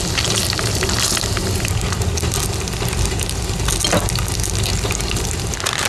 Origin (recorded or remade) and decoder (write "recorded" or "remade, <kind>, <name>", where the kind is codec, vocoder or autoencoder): recorded